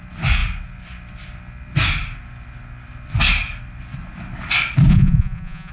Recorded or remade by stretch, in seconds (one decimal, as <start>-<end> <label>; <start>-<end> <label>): 0.0-4.9 recorded; 4.9-5.7 remade